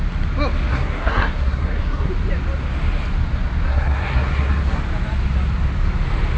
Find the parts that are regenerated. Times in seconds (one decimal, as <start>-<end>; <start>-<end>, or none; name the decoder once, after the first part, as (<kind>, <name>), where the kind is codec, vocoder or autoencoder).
0.7-2.1 (codec, SNAC); 3.7-4.8